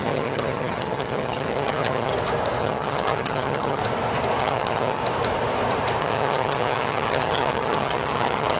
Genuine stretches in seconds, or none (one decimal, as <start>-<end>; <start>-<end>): 2.1-2.6; 3.8-4.4; 5.0-6.0